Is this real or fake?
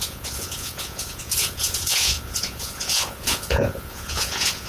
fake